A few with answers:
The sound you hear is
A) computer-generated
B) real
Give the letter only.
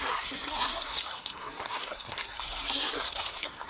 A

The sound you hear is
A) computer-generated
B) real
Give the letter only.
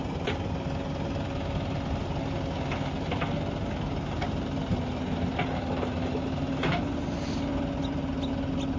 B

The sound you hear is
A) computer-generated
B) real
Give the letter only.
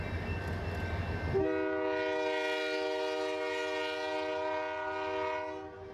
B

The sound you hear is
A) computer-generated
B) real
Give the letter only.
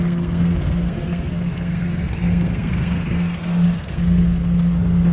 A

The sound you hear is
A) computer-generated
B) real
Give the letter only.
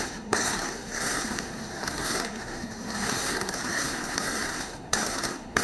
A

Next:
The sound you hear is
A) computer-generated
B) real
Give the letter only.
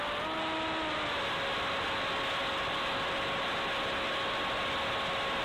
B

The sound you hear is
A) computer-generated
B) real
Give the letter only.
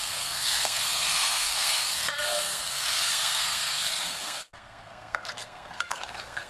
A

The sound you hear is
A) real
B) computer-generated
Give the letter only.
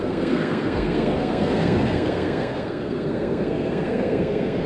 B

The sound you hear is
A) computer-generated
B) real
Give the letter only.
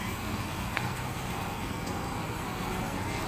A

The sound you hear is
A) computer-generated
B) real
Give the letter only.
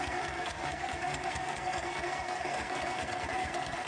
A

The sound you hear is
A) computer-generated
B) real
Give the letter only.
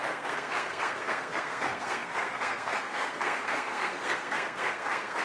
A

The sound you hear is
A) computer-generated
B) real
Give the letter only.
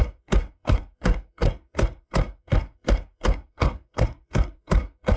A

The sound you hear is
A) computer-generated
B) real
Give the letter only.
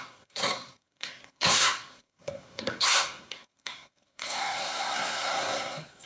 A